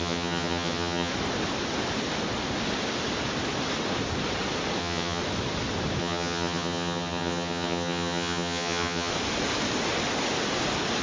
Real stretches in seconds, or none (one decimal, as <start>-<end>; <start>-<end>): 1.1-4.8; 5.2-6.0; 9.1-11.0

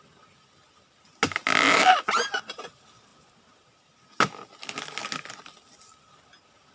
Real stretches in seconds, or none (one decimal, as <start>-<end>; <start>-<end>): 0.0-6.7

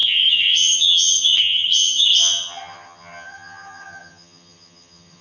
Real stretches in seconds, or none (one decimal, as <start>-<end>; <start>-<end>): none